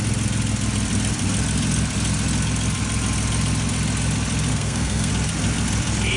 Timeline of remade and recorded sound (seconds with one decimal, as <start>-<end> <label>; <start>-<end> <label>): 0.0-4.5 recorded; 4.5-5.1 remade; 5.1-6.2 recorded